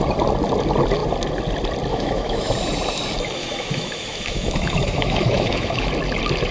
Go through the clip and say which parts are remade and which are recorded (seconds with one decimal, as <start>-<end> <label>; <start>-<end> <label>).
0.0-1.9 recorded; 1.9-2.5 remade; 2.5-3.4 recorded; 3.4-5.9 remade; 5.9-6.5 recorded